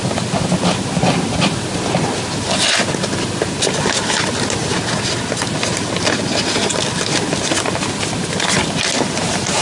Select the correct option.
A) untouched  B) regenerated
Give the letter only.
A